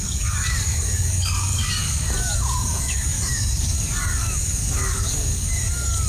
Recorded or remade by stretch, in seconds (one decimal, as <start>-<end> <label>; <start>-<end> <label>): 0.0-6.1 remade